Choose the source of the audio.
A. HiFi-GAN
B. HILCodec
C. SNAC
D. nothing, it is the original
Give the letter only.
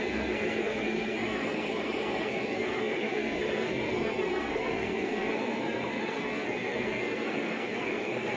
C